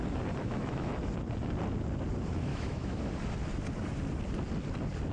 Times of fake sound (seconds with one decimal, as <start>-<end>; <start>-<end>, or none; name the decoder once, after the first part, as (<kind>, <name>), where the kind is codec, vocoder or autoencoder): 0.4-0.9 (autoencoder, DAC-VAE); 2.5-3.0